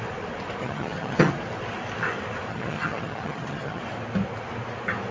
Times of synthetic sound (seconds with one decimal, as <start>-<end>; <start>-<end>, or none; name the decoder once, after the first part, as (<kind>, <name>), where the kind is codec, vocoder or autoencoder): 0.6-1.3 (vocoder, HiFi-GAN); 2.5-3.8